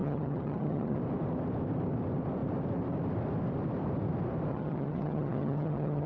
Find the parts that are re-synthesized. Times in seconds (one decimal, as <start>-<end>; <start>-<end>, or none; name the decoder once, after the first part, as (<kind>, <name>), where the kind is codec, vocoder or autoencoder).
0.0-1.0 (vocoder, HiFi-GAN); 4.5-6.1